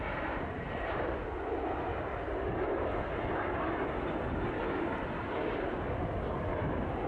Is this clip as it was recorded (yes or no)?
yes